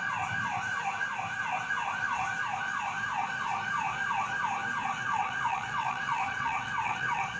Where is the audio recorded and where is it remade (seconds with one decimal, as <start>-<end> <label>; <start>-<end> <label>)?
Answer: 0.0-5.0 recorded; 5.0-7.4 remade